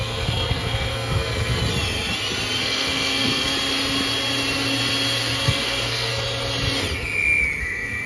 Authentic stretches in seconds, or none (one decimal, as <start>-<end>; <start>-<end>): 1.6-2.6; 3.5-5.4; 6.1-7.6